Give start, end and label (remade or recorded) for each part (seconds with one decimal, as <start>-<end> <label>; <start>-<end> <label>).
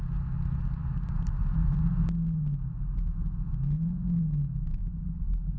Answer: 0.0-5.6 recorded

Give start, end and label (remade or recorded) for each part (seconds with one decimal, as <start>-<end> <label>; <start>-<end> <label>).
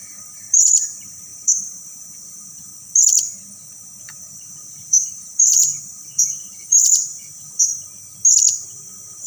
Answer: 0.0-2.7 remade; 2.7-4.0 recorded; 4.0-7.7 remade; 7.7-8.6 recorded; 8.6-9.3 remade